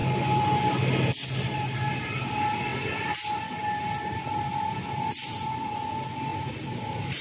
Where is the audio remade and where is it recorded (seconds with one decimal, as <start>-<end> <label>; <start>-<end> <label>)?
0.0-7.2 recorded